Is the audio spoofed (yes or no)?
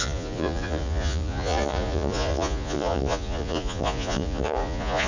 yes